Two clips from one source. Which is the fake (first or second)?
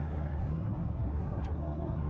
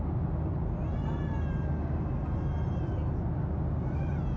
first